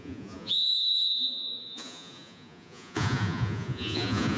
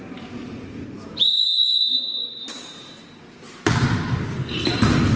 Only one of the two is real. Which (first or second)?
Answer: second